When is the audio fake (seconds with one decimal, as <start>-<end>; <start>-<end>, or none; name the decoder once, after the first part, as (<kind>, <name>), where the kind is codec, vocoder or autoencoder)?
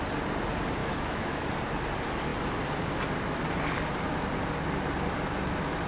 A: 0.8-1.5 (autoencoder, DAC-VAE)